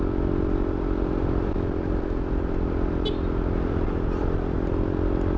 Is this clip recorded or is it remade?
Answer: recorded